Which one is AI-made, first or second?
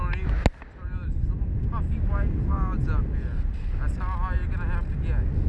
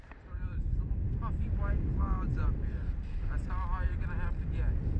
second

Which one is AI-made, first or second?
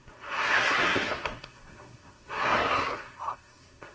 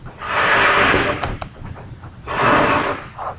first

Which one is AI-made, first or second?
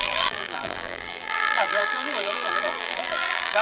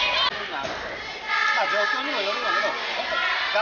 first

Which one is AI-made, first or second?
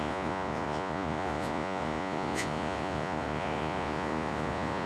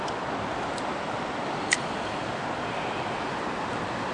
first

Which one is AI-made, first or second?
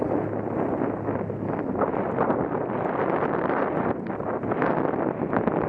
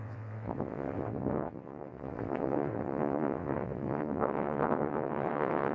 second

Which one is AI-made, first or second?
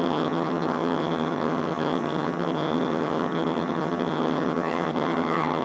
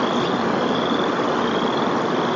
first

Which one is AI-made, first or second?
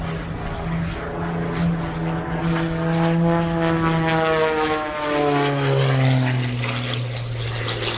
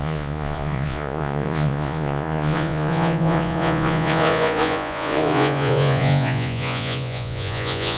second